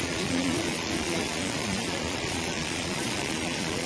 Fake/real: fake